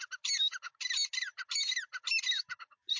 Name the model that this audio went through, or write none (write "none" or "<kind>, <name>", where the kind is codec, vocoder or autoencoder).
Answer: none